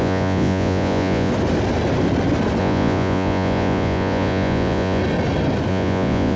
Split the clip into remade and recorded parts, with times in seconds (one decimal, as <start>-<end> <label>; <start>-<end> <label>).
0.0-1.3 remade; 1.3-2.6 recorded; 2.6-5.0 remade; 5.0-5.7 recorded; 5.7-6.4 remade